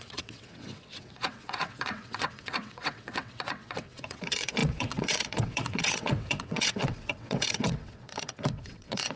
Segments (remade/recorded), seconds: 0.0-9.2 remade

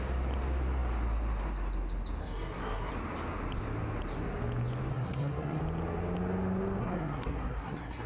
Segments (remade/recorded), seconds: 0.0-2.2 recorded; 2.2-2.9 remade; 2.9-4.9 recorded; 4.9-5.6 remade; 5.6-6.8 recorded; 6.8-8.1 remade